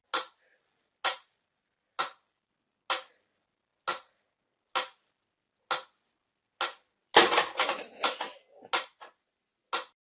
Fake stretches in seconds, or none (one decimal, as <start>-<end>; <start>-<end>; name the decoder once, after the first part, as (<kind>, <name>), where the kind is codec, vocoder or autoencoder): none